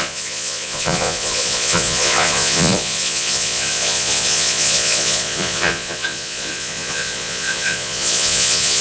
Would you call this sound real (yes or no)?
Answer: no